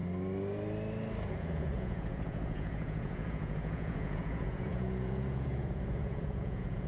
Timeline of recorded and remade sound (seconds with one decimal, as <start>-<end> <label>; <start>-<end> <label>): 0.0-1.3 recorded; 1.3-6.9 remade